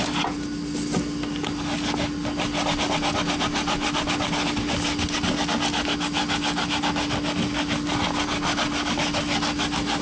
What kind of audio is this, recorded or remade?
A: recorded